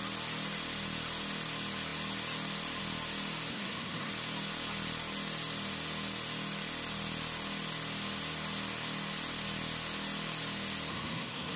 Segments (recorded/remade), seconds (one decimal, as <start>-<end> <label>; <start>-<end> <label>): 0.0-3.5 recorded; 3.5-4.1 remade; 4.1-10.9 recorded; 10.9-11.6 remade